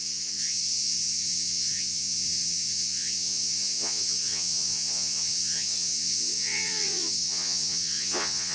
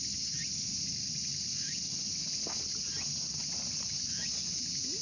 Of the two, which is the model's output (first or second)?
first